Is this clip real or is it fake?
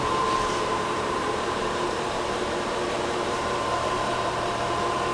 fake